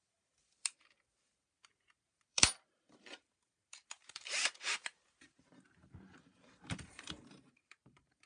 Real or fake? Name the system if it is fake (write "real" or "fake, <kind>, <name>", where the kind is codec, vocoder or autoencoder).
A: fake, vocoder, BigVGAN v2